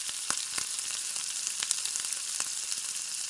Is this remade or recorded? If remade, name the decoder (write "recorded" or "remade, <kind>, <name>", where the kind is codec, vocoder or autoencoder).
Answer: recorded